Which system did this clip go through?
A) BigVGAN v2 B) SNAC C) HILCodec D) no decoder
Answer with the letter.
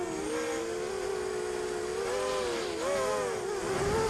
D